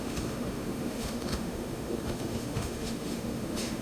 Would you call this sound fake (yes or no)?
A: yes